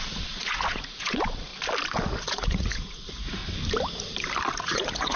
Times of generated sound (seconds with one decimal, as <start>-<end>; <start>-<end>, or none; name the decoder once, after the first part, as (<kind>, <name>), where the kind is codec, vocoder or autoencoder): 0.0-1.5 (vocoder, Vocos); 2.2-3.4; 4.6-5.2